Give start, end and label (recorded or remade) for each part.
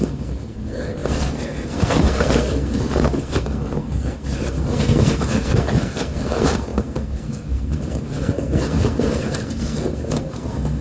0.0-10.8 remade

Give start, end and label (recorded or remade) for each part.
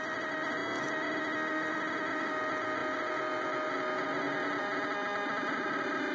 0.0-6.1 recorded